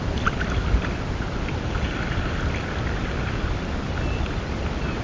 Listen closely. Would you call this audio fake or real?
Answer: real